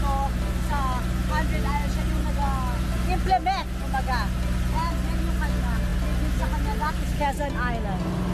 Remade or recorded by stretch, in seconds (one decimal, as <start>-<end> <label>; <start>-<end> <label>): 0.0-8.3 recorded

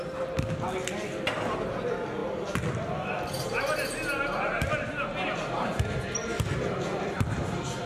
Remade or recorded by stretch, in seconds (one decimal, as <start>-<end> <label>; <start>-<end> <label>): 0.0-5.1 recorded; 5.1-5.7 remade; 5.7-7.9 recorded

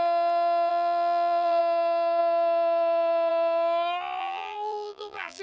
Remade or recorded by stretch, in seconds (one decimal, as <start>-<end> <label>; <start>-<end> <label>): 0.0-0.7 recorded; 0.7-1.6 remade; 1.6-4.2 recorded; 4.2-5.4 remade

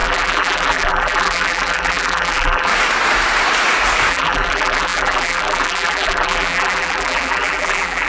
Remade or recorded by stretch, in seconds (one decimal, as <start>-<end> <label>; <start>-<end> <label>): 0.0-2.7 remade; 2.7-4.1 recorded; 4.1-8.1 remade

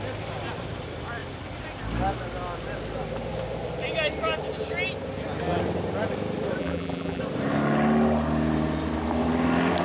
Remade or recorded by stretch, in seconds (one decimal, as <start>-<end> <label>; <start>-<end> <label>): 0.0-6.6 recorded; 6.6-7.2 remade; 7.2-9.8 recorded

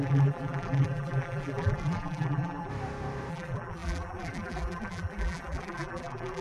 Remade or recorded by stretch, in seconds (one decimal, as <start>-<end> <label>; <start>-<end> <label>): 0.0-2.7 remade; 2.7-3.3 recorded; 3.3-6.4 remade